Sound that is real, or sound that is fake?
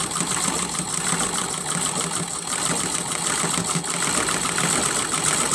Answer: real